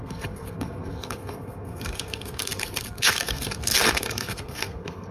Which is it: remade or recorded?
remade